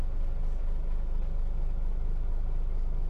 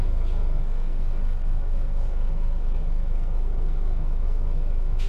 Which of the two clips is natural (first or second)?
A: first